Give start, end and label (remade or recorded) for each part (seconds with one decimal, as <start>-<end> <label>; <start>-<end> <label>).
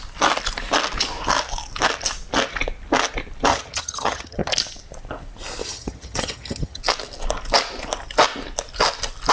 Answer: 0.0-3.5 recorded; 3.5-4.5 remade; 4.5-5.6 recorded; 5.6-6.8 remade; 6.8-9.3 recorded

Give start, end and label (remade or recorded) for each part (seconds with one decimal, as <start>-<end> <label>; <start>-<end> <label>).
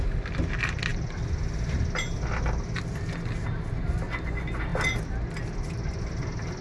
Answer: 0.0-6.6 recorded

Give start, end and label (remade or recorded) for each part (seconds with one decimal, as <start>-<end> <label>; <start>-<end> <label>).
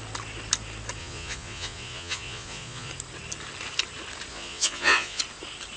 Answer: 0.0-1.0 recorded; 1.0-2.9 remade; 2.9-4.3 recorded; 4.3-5.2 remade; 5.2-5.8 recorded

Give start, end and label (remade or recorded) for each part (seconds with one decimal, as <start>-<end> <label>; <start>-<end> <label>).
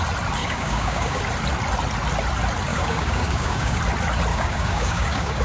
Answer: 0.0-0.4 recorded; 0.4-1.2 remade; 1.2-2.7 recorded; 2.7-3.8 remade; 3.8-4.3 recorded; 4.3-5.4 remade